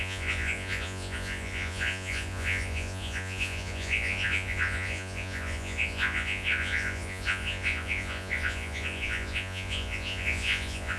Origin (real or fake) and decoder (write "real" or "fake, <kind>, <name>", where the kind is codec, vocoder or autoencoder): fake, vocoder, Vocos